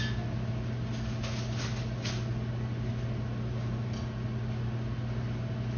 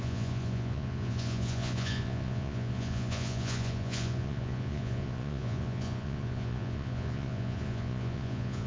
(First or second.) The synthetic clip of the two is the second